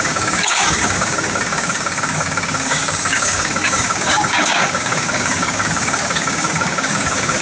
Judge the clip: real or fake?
fake